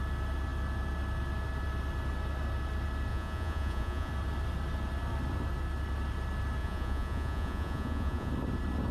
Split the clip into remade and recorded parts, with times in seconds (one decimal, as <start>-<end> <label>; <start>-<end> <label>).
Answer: 0.0-3.1 recorded; 3.1-4.1 remade; 4.1-6.6 recorded; 6.6-8.3 remade; 8.3-8.9 recorded